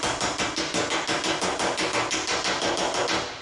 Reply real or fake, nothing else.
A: real